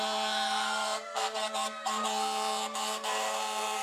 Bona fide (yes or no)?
no